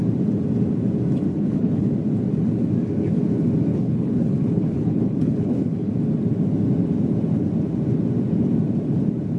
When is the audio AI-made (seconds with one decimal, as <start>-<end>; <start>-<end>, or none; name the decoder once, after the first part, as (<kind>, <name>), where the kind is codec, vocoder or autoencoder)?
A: 1.3-1.9 (codec, HILCodec); 3.7-5.9

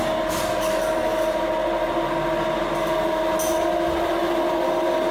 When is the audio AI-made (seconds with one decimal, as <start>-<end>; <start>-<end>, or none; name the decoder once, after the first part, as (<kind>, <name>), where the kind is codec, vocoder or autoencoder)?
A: none

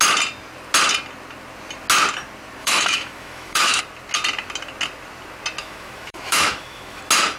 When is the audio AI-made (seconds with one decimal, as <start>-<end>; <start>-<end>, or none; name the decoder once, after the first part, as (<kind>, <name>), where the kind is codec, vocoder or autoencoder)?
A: 2.6-3.8 (autoencoder, DAC-VAE); 5.6-7.0

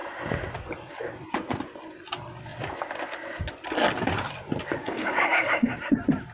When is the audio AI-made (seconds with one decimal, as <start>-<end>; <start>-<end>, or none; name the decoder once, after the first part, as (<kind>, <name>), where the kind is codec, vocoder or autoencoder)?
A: 4.8-5.7 (codec, DAC)

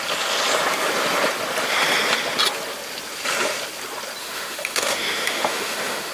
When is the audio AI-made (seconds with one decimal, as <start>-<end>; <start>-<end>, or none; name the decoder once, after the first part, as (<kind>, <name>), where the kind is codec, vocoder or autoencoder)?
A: 4.2-6.1 (autoencoder, DAC-VAE)